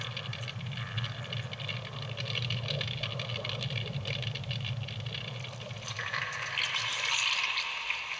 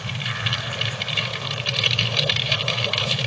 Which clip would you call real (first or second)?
first